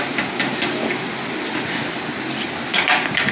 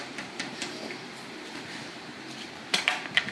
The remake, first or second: second